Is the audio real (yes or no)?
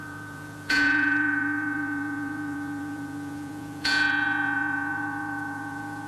no